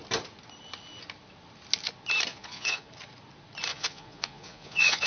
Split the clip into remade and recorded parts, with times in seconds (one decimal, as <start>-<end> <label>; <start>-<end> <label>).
0.0-2.3 recorded; 2.3-2.9 remade; 2.9-3.7 recorded; 3.7-5.1 remade